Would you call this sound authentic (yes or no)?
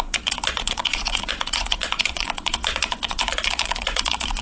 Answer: no